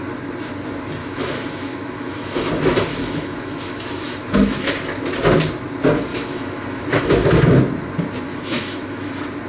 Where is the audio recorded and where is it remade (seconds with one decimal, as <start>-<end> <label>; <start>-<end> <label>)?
0.0-1.0 recorded; 1.0-2.5 remade; 2.5-2.9 recorded; 2.9-4.7 remade; 4.7-6.1 recorded; 6.1-7.1 remade; 7.1-8.3 recorded; 8.3-9.1 remade; 9.1-9.5 recorded